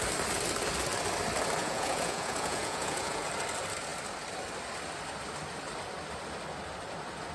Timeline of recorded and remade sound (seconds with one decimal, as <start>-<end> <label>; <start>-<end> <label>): 0.0-1.6 recorded; 1.6-3.3 remade; 3.3-7.3 recorded